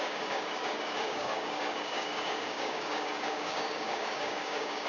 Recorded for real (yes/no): no